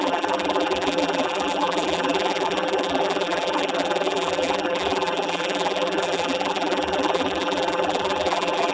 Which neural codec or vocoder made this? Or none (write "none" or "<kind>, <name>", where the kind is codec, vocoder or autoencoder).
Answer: vocoder, BigVGAN v2